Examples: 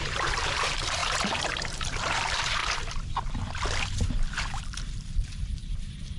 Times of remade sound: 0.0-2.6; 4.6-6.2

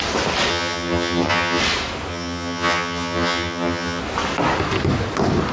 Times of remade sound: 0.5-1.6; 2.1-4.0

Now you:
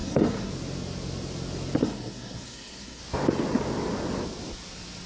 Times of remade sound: 0.0-0.5; 1.8-3.0